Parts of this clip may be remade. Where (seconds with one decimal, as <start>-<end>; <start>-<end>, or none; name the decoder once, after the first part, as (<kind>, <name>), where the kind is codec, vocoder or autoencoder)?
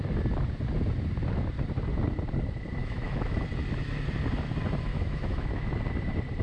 2.8-3.4 (autoencoder, DAC-VAE); 4.9-5.7